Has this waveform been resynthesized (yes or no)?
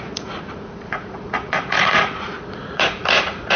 yes